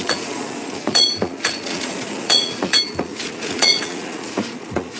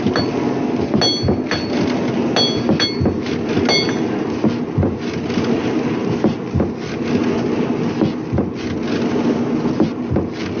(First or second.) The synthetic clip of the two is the first